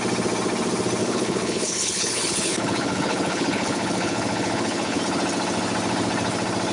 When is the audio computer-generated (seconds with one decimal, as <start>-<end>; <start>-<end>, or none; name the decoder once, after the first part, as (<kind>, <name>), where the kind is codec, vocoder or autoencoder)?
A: 1.0-5.0 (codec, HILCodec)